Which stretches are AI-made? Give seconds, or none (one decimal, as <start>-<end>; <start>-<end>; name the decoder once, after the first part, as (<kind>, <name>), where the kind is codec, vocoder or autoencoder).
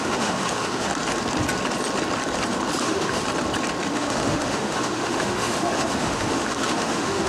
0.0-0.9 (autoencoder, DAC-VAE); 2.8-3.2; 3.9-7.3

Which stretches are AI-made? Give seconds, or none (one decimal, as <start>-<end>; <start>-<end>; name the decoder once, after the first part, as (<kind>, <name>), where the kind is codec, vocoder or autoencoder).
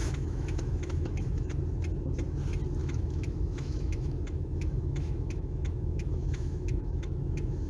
0.0-1.5 (autoencoder, DAC-VAE); 2.8-7.7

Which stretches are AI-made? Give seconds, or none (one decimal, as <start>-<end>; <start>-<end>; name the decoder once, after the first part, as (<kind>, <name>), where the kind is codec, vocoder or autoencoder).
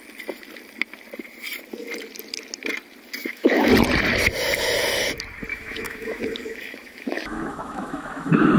3.2-3.7 (autoencoder, DAC-VAE); 5.5-8.6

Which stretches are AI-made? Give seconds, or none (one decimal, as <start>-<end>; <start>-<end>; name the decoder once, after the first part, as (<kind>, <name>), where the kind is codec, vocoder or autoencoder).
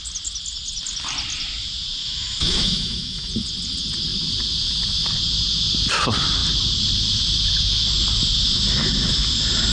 2.0-3.3 (autoencoder, DAC-VAE)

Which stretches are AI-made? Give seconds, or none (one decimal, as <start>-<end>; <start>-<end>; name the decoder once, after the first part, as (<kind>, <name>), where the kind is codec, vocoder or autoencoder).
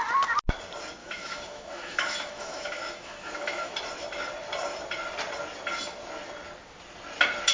1.0-3.7 (autoencoder, DAC-VAE)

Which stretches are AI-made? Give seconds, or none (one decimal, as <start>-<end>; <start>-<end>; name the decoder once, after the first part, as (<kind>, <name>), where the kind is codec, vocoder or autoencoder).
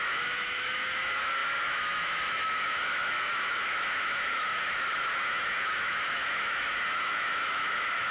0.0-8.1 (autoencoder, DAC-VAE)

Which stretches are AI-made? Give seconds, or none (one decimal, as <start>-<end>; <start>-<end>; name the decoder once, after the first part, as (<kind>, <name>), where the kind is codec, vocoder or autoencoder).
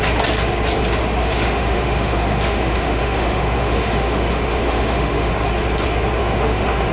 1.2-5.3 (autoencoder, DAC-VAE); 6.2-6.9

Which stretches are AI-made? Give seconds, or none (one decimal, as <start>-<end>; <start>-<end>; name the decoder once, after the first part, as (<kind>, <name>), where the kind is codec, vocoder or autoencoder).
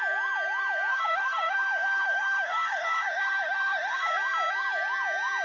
0.9-4.1 (autoencoder, DAC-VAE)